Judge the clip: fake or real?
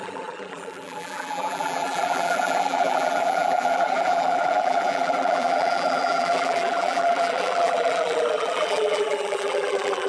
fake